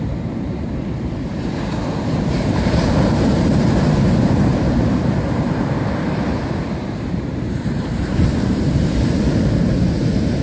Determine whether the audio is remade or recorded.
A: remade